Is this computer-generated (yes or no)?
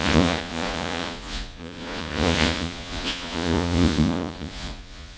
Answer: yes